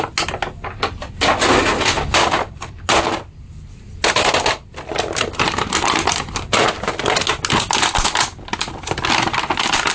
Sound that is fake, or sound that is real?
real